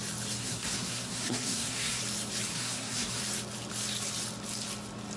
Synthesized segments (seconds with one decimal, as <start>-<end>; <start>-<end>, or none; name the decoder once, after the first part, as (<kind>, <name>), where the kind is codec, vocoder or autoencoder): 0.4-2.0 (codec, SNAC); 2.5-3.2